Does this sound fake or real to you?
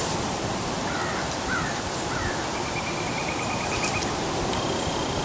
real